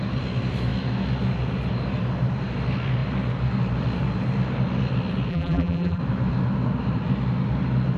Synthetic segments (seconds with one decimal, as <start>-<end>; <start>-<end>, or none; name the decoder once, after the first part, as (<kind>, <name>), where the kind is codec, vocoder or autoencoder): 5.3-6.0 (vocoder, BigVGAN v2)